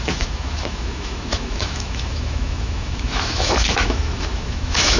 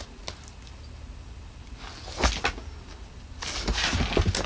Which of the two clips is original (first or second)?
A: second